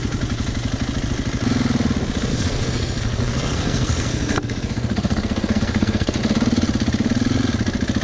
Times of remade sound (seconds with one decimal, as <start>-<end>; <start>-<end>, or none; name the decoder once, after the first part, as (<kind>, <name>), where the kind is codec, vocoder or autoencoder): 2.3-6.2 (codec, SNAC)